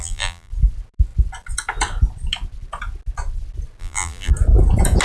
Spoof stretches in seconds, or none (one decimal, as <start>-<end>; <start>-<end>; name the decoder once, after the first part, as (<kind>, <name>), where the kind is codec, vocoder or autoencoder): 0.0-0.5 (vocoder, BigVGAN v2); 3.8-4.3